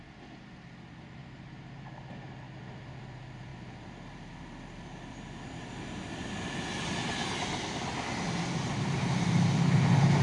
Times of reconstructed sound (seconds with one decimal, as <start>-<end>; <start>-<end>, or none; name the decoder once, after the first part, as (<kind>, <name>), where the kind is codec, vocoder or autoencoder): none

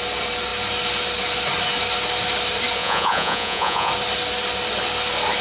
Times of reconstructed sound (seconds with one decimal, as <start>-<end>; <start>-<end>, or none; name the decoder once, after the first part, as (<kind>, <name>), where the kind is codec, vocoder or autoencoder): 2.8-3.9 (vocoder, Vocos)

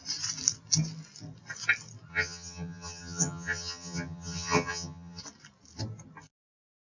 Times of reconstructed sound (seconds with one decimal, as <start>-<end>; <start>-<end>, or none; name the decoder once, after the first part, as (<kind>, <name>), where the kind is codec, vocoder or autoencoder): 2.1-5.2 (vocoder, HiFi-GAN)

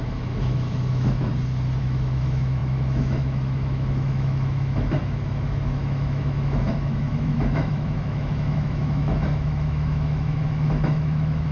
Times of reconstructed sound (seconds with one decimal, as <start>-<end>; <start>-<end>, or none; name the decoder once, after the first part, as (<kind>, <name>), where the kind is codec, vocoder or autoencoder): 0.0-1.3 (autoencoder, DAC-VAE); 1.8-11.5

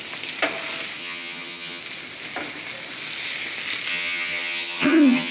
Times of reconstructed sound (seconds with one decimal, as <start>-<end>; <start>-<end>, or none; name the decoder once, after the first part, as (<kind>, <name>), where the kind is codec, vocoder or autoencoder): 1.0-1.8 (vocoder, HiFi-GAN); 3.9-5.3

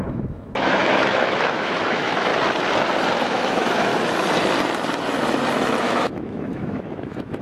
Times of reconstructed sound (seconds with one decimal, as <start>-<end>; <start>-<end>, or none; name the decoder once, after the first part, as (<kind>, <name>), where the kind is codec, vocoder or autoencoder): 0.0-2.3 (autoencoder, DAC-VAE); 3.2-3.9; 5.8-7.4

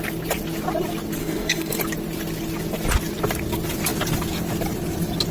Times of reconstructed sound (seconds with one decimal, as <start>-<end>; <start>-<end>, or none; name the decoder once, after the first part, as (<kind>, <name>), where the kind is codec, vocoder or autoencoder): 1.2-1.8 (codec, SNAC)